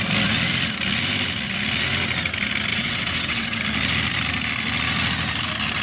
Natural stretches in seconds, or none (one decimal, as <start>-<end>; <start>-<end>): 0.0-2.7; 3.6-5.8